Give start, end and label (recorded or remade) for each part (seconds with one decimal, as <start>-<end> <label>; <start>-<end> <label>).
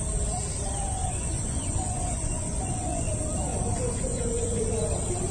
0.0-1.0 recorded; 1.0-3.1 remade; 3.1-3.5 recorded; 3.5-4.6 remade; 4.6-5.3 recorded